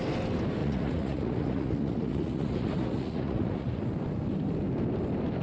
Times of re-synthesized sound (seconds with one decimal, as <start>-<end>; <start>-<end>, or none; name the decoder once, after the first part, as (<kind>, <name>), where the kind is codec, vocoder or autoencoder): 0.6-3.8 (vocoder, Vocos)